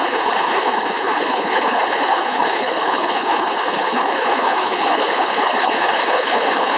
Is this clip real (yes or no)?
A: no